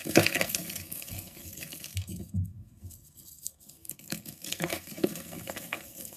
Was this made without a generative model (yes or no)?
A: no